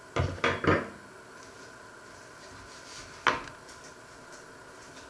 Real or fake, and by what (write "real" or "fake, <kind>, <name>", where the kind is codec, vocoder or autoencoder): real